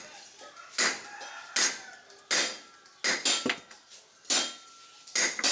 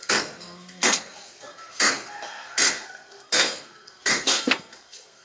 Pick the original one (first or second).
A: first